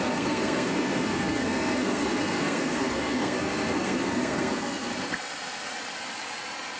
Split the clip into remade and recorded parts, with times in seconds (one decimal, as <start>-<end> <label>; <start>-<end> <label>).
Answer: 0.0-4.9 remade; 4.9-6.8 recorded

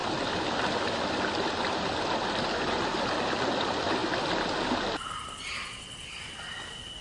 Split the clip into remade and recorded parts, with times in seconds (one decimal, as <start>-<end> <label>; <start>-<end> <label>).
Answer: 0.0-7.0 recorded

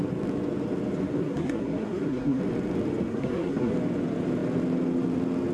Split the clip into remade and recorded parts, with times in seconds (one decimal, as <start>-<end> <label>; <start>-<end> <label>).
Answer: 0.0-1.2 recorded; 1.2-2.4 remade; 2.4-3.1 recorded; 3.1-3.7 remade; 3.7-5.5 recorded

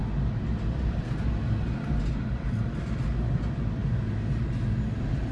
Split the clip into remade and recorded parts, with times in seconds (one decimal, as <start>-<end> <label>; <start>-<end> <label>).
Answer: 0.0-5.3 recorded

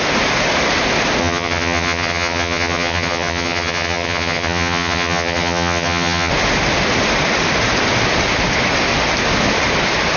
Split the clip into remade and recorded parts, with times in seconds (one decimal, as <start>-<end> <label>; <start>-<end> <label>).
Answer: 0.0-1.2 recorded; 1.2-6.3 remade; 6.3-10.2 recorded

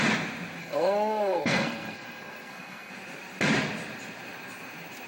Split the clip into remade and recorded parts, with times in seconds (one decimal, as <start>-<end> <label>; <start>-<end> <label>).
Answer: 0.0-0.6 recorded; 0.6-2.9 remade; 2.9-5.1 recorded